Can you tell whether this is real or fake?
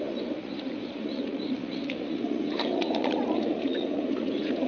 fake